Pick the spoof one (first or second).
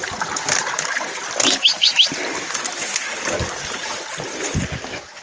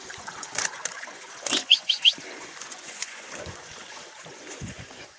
second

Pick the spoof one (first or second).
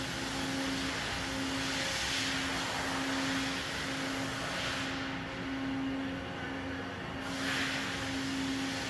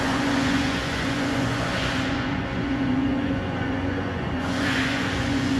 second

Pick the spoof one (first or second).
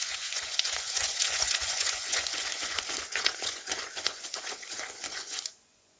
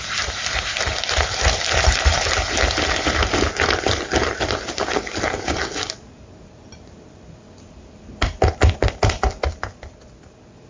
first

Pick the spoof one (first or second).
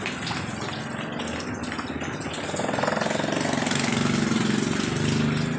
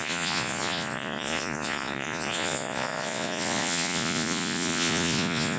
second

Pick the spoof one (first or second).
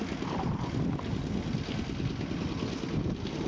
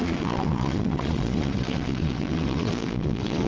second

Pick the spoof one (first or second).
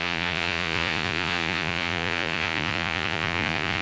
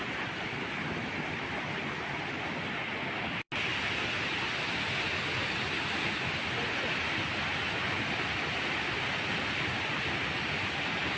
first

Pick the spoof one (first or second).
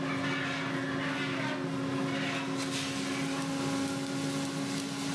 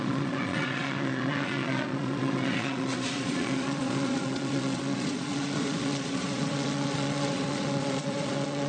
second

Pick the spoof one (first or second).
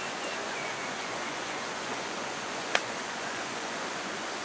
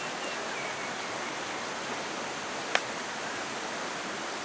first